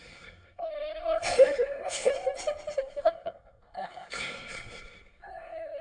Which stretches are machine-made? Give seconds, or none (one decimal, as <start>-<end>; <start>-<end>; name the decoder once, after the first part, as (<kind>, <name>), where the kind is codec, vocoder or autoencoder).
0.0-2.1 (codec, SNAC); 2.8-5.8